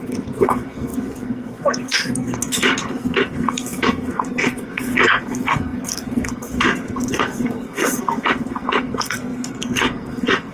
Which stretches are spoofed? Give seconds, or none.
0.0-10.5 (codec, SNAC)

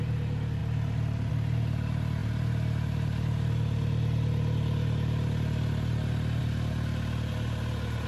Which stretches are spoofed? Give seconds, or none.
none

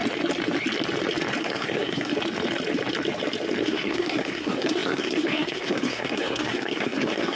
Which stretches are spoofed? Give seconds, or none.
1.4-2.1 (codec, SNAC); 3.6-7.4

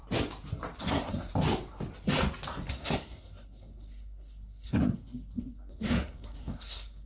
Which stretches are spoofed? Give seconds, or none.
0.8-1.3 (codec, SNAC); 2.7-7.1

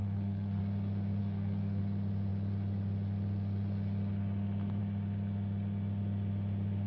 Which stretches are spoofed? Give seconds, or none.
0.0-0.6 (codec, SNAC); 1.2-1.8